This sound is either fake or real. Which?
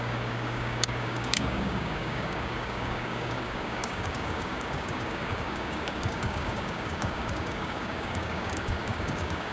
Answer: fake